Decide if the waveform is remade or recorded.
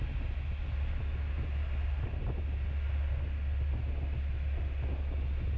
recorded